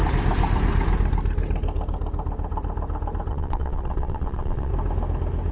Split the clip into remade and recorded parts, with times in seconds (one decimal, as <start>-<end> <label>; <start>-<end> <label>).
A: 0.0-3.3 recorded; 3.3-4.7 remade; 4.7-5.5 recorded